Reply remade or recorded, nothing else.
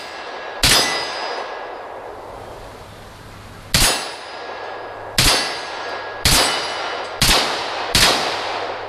recorded